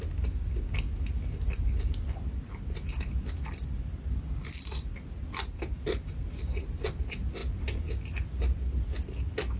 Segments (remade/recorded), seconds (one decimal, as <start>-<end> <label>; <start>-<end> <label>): 0.0-9.6 recorded